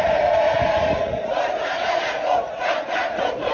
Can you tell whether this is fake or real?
fake